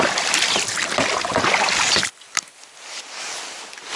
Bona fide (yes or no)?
yes